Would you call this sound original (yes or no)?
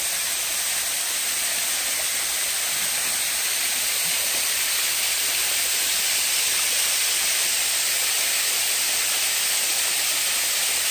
yes